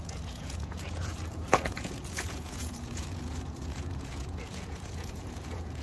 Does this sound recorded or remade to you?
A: remade